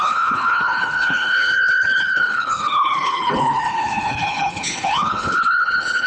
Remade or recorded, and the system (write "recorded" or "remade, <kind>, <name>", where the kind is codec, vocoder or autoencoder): remade, codec, HILCodec